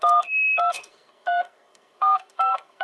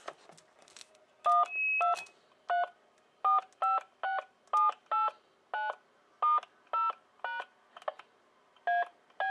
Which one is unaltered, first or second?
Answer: second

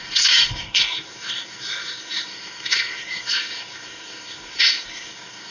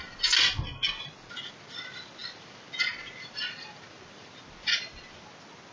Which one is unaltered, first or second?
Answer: second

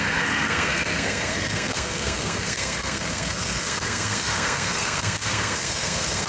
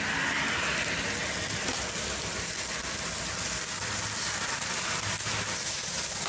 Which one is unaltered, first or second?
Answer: second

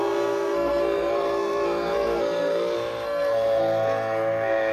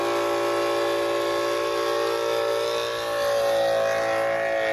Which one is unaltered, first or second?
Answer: second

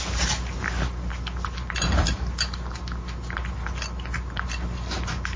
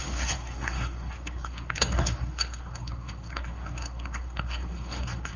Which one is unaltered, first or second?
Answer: first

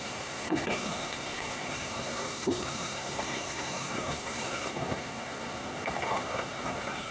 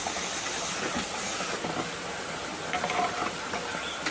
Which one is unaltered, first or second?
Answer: second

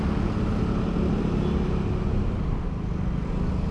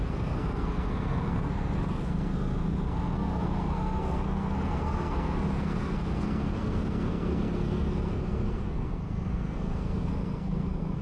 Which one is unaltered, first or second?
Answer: first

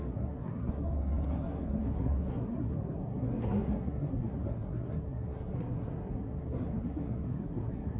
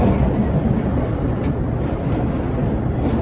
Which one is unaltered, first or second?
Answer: second